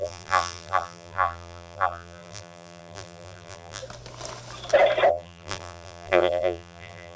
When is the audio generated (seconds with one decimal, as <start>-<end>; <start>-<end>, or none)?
0.0-3.8; 5.1-7.2